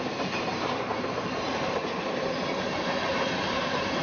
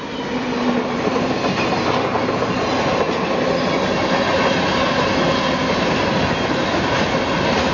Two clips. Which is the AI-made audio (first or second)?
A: first